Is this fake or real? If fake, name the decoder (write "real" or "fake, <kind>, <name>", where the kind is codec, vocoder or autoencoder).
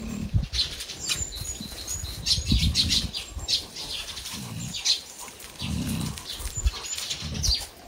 fake, vocoder, BigVGAN v2